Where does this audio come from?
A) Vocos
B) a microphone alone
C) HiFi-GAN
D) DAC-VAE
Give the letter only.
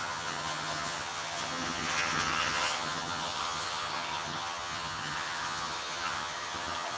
C